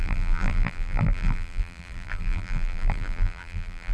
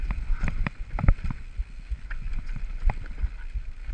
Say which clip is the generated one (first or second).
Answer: first